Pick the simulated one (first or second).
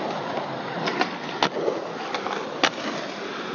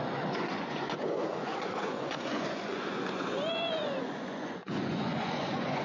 second